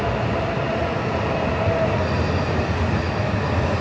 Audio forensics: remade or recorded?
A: recorded